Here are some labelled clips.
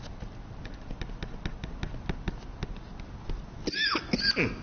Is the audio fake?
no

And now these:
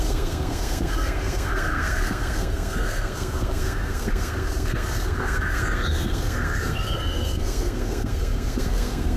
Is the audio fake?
yes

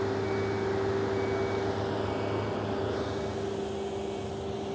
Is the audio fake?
no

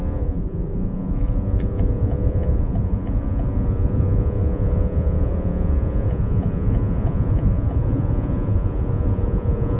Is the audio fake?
yes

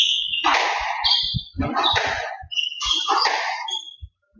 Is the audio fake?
no